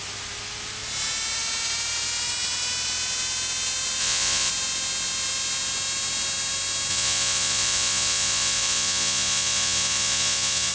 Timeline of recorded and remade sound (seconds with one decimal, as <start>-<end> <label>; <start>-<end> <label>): 0.0-4.0 recorded; 4.0-4.5 remade; 4.5-6.9 recorded; 6.9-10.7 remade